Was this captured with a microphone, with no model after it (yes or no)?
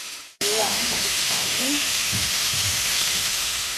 no